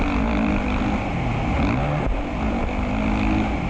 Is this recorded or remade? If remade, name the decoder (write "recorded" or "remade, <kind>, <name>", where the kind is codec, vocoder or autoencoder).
recorded